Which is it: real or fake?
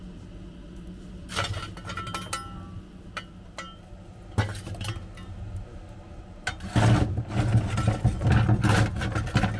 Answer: real